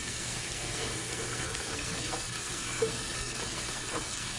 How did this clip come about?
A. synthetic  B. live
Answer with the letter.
A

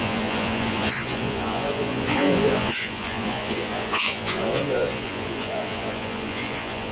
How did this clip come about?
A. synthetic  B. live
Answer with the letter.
A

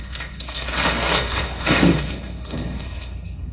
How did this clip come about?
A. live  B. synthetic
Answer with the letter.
B